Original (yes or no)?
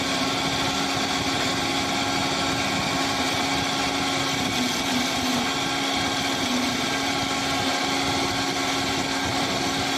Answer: yes